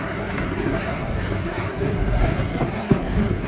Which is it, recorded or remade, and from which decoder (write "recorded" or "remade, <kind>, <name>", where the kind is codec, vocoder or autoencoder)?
remade, codec, SNAC